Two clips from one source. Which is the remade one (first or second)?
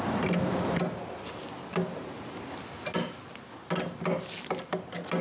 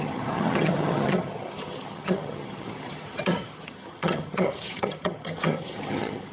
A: second